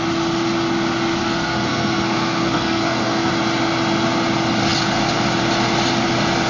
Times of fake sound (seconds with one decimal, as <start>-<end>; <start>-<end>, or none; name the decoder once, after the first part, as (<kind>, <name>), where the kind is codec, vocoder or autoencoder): 1.2-3.3 (codec, SNAC)